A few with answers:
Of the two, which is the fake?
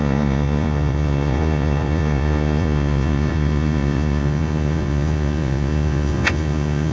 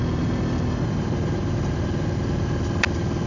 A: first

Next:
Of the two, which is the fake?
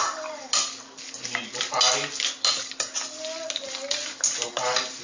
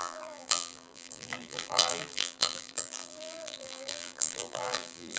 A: second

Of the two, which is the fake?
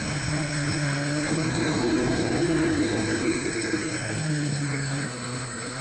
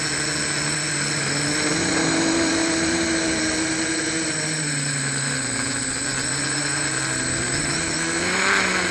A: first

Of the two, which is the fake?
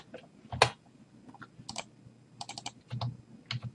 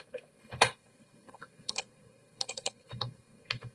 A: second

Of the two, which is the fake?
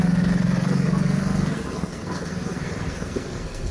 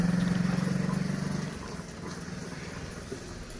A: first